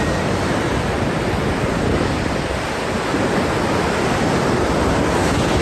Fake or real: real